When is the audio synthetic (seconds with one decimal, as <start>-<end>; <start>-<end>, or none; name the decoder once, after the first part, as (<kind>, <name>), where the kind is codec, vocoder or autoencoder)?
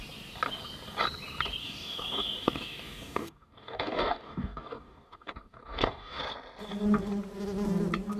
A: 1.6-6.2 (codec, DAC)